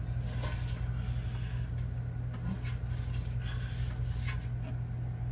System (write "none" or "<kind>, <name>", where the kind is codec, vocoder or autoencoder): none